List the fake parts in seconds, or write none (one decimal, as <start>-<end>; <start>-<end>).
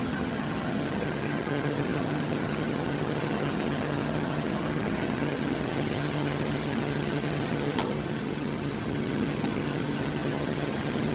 0.0-11.1